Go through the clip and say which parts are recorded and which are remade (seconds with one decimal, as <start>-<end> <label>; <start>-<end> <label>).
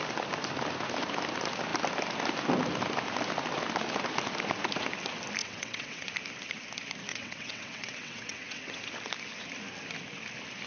0.0-5.4 recorded; 5.4-6.1 remade; 6.1-7.1 recorded; 7.1-8.8 remade; 8.8-10.7 recorded